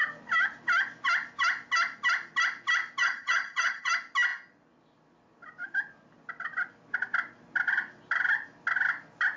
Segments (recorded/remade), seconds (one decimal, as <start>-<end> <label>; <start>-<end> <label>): 0.0-3.0 recorded; 3.0-3.9 remade; 3.9-9.4 recorded

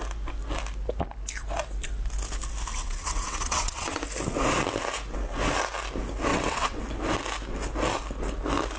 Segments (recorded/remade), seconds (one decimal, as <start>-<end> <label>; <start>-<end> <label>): 0.0-2.7 recorded; 2.7-4.0 remade; 4.0-6.3 recorded; 6.3-6.8 remade; 6.8-8.8 recorded

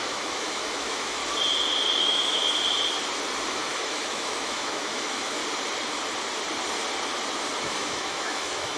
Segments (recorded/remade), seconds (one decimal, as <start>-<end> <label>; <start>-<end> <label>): 0.0-1.2 remade; 1.2-2.0 recorded; 2.0-2.4 remade; 2.4-3.5 recorded; 3.5-5.4 remade; 5.4-7.6 recorded; 7.6-8.8 remade

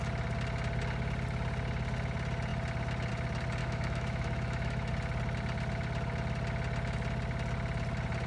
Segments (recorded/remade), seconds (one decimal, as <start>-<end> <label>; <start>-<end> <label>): 0.0-3.6 recorded; 3.6-4.9 remade; 4.9-8.3 recorded

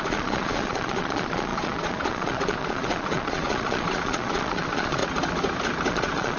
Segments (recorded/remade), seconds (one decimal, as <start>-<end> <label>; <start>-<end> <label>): 0.0-5.0 remade; 5.0-5.9 recorded; 5.9-6.4 remade

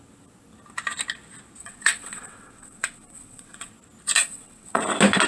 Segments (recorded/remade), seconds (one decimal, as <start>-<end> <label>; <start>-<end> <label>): 0.0-1.6 recorded; 1.6-3.7 remade; 3.7-4.2 recorded; 4.2-4.8 remade; 4.8-5.3 recorded